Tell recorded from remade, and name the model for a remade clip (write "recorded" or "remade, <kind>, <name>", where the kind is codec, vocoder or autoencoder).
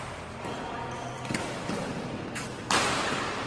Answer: recorded